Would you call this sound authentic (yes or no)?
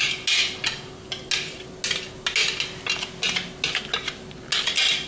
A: yes